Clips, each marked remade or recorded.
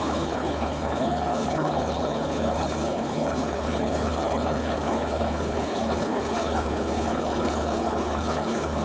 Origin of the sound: remade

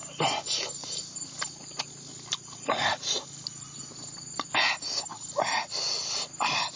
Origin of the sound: recorded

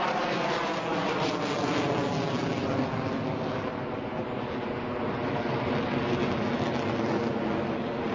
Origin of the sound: recorded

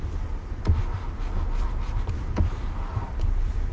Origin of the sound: recorded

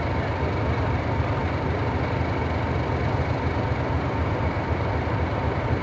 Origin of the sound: recorded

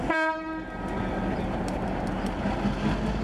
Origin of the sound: remade